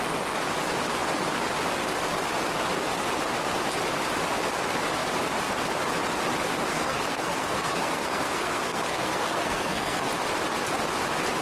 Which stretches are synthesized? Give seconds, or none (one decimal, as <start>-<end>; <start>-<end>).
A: 6.7-10.1